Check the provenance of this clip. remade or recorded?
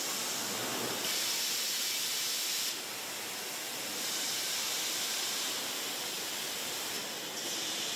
recorded